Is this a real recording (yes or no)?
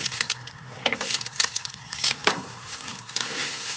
no